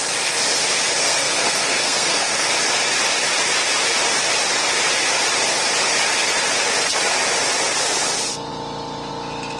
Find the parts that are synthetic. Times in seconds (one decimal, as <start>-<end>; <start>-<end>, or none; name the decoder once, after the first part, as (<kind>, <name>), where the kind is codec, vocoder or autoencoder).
1.0-2.5 (codec, SNAC)